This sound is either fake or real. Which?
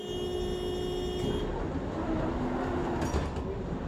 real